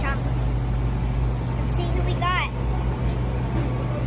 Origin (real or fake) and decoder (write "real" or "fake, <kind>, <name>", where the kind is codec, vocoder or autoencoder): real